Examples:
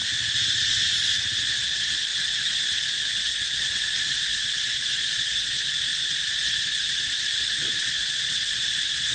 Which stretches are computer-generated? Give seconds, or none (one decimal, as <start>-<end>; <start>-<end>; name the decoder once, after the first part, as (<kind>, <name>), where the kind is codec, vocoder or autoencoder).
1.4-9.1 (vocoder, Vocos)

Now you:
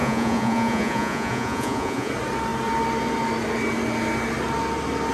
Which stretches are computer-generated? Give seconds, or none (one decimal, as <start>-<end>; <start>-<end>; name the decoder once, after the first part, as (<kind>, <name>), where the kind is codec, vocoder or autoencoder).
0.0-2.1 (vocoder, Vocos)

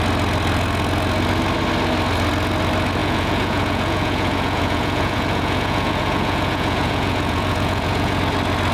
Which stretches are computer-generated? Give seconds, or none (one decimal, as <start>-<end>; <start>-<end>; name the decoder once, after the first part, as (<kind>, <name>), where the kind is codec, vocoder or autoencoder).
3.0-8.2 (vocoder, Vocos)

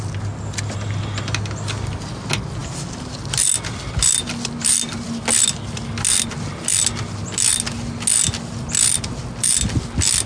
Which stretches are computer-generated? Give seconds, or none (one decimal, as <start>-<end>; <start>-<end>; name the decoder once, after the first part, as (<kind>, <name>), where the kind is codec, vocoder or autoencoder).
none

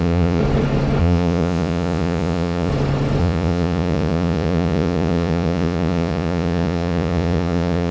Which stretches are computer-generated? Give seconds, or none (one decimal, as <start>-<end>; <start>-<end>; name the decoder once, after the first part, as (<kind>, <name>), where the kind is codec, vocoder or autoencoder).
0.0-0.4 (vocoder, Vocos); 1.0-2.7; 3.2-7.9